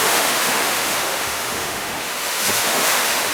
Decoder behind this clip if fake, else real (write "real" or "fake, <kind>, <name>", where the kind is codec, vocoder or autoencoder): fake, autoencoder, DAC-VAE